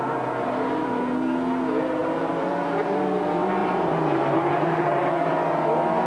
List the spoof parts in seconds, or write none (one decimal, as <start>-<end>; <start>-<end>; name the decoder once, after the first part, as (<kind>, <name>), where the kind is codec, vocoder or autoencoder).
2.0-2.5 (vocoder, BigVGAN v2); 3.6-5.0